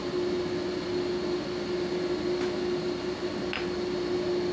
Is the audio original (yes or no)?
yes